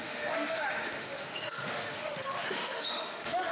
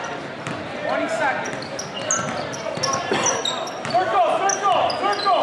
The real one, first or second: second